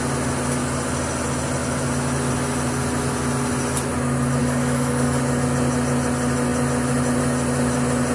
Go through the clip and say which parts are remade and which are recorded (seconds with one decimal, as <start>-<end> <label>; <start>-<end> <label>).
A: 0.0-4.4 recorded; 4.4-5.2 remade; 5.2-8.1 recorded